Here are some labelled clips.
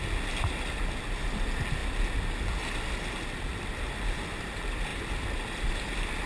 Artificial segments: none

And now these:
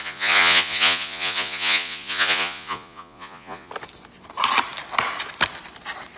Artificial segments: 0.0-3.7

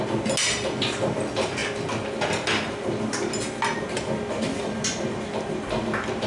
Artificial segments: none

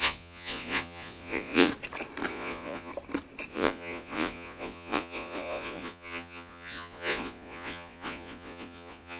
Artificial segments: 0.0-1.7; 2.3-2.9; 3.5-9.2

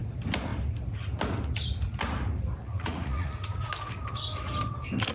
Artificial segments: 2.6-3.7

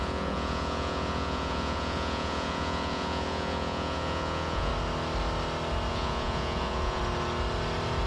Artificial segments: 0.0-4.7; 5.9-7.0